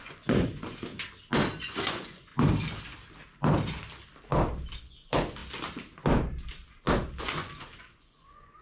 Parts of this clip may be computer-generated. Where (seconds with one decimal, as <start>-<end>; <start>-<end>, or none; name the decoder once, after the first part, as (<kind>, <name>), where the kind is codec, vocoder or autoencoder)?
0.0-0.9 (vocoder, Vocos); 1.6-2.3; 4.8-5.4; 7.2-8.6

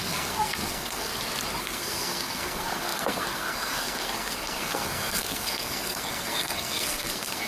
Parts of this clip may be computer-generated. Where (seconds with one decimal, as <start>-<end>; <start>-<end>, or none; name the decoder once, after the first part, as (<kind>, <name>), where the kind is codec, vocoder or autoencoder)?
0.0-1.1 (codec, SNAC); 1.6-7.5